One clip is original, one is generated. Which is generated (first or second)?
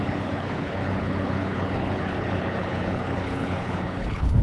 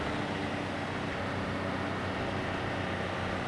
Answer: first